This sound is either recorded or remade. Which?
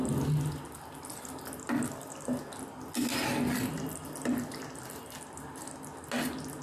recorded